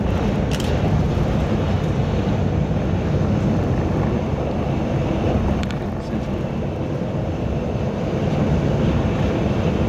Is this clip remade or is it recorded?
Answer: recorded